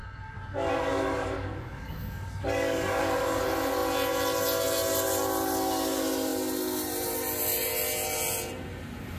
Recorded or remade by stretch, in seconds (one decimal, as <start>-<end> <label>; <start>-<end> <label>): 0.0-3.4 remade; 3.4-9.2 recorded